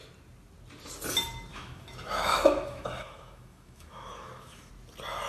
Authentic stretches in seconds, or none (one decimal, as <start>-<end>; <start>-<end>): 0.0-1.5; 4.7-5.3